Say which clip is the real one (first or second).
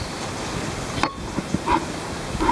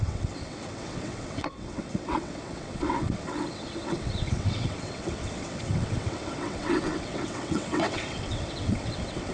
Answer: first